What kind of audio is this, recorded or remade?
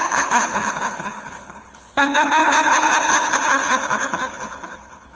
remade